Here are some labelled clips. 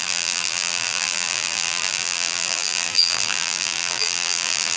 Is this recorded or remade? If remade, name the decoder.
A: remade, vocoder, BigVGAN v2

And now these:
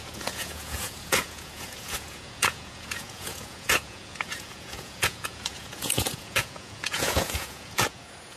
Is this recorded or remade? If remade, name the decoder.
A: remade, vocoder, Vocos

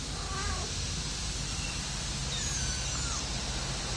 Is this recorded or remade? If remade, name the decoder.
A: recorded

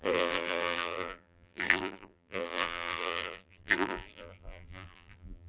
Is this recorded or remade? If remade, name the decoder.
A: remade, vocoder, BigVGAN v2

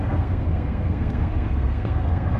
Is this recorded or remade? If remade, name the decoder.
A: remade, codec, SNAC